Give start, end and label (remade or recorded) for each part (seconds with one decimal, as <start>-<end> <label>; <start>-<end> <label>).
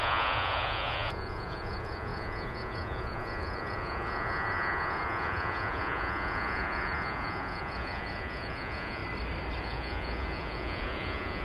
0.0-9.0 remade; 9.0-9.6 recorded; 9.6-11.4 remade